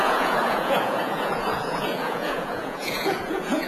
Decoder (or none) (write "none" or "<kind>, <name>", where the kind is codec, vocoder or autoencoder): vocoder, Vocos